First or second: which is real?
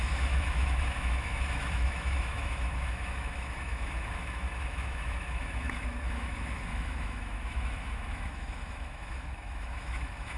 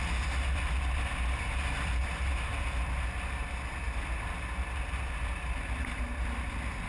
second